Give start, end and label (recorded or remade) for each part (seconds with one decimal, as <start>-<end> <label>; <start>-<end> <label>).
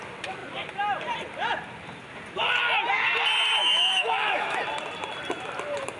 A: 0.0-3.6 recorded; 3.6-4.6 remade; 4.6-6.0 recorded